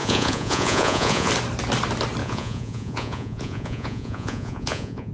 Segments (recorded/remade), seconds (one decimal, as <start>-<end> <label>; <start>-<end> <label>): 0.0-1.3 remade; 1.3-2.2 recorded; 2.2-5.1 remade